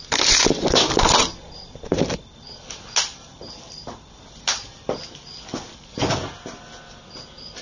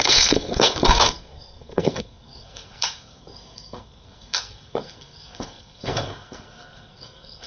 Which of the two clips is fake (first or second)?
second